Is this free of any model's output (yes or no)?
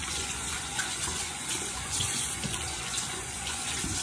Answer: no